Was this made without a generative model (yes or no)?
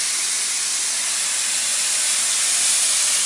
yes